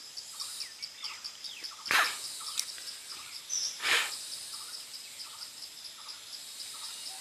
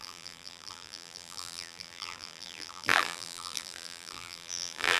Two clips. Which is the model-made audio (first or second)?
second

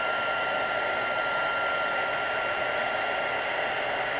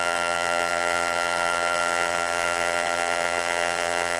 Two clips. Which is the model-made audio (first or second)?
second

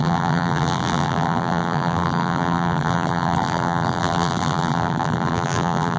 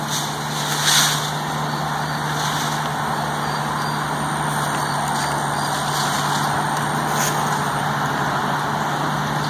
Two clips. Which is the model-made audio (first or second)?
first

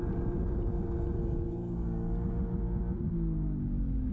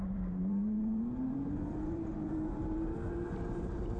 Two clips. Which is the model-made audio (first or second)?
second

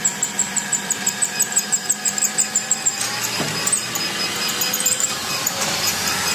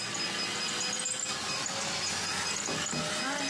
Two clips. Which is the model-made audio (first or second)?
first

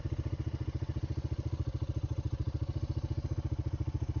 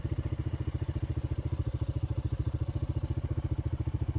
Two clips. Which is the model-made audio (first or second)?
second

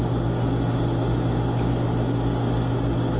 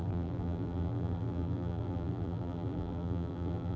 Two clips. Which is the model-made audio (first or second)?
second